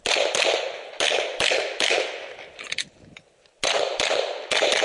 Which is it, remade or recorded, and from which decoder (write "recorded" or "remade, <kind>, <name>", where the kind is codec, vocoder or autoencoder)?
recorded